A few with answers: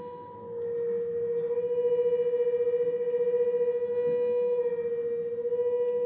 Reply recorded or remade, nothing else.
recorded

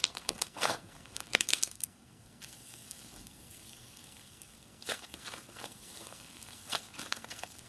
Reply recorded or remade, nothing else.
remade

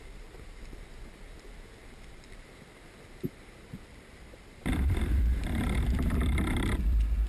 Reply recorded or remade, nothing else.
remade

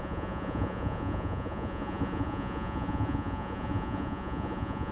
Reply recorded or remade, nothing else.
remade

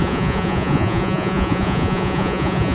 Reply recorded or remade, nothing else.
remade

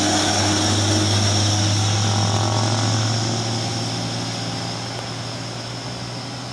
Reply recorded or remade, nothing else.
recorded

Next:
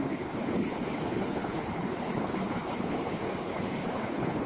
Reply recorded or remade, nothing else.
remade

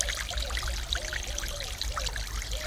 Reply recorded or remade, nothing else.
recorded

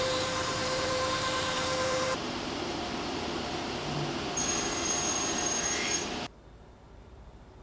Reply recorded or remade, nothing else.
remade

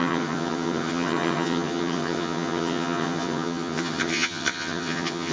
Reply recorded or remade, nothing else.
remade